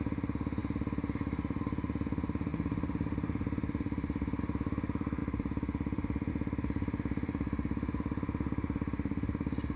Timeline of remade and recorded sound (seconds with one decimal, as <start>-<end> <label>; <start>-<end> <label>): 0.0-9.8 recorded